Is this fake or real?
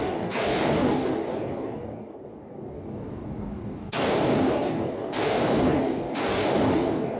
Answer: fake